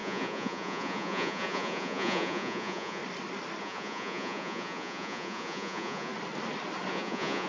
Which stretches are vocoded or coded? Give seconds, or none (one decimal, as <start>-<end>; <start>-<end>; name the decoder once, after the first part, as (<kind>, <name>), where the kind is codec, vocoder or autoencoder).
0.0-3.0 (vocoder, Vocos); 3.6-6.1; 6.9-7.5